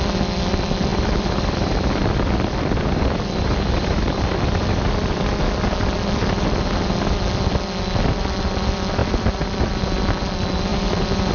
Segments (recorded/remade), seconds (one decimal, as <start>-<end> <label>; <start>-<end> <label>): 0.0-0.9 recorded; 0.9-5.3 remade; 5.3-9.0 recorded; 9.0-9.7 remade; 9.7-10.7 recorded; 10.7-11.3 remade